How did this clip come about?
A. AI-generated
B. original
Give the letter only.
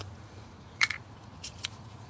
A